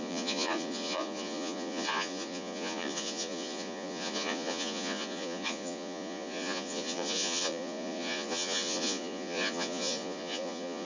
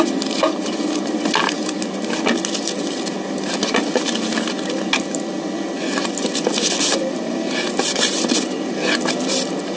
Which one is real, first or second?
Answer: second